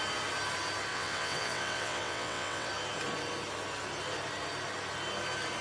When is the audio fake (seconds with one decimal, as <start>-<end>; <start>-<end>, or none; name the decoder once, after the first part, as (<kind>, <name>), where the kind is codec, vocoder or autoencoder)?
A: 0.9-2.7 (vocoder, WaveNeXt)